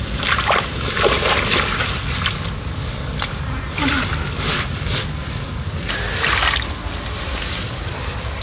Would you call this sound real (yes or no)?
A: yes